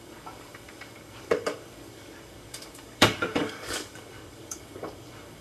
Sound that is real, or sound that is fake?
fake